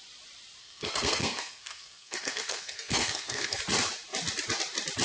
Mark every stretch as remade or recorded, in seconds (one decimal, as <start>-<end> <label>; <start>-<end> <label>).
0.0-0.6 recorded; 0.6-3.6 remade; 3.6-5.0 recorded